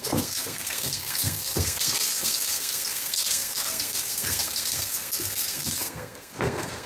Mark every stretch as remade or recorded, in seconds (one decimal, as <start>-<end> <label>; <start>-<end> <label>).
0.0-6.9 remade